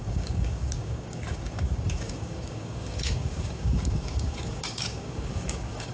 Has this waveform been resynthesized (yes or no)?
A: yes